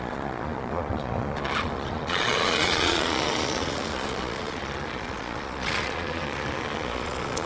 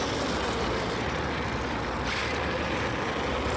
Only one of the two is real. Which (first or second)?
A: second